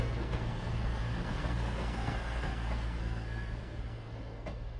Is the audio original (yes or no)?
no